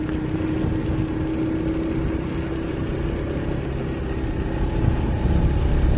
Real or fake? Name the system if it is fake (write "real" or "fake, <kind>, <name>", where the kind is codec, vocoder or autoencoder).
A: real